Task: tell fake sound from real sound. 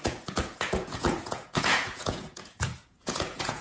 fake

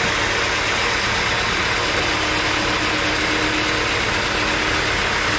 real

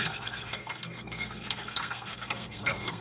fake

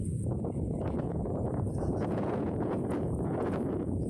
fake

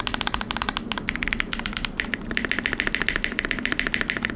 real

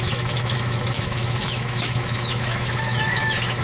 fake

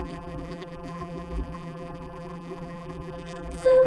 fake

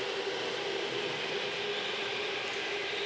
real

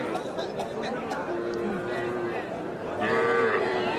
fake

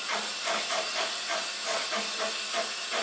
real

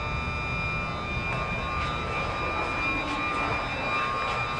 real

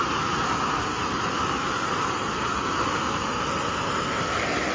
real